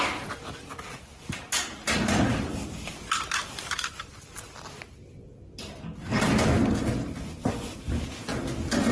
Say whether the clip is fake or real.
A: fake